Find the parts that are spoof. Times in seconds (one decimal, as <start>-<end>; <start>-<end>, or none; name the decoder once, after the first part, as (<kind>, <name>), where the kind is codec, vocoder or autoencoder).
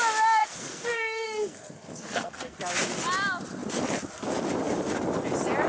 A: 0.4-2.6 (codec, SNAC)